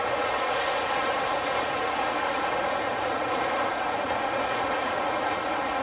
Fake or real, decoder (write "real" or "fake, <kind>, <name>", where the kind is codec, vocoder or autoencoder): fake, vocoder, Vocos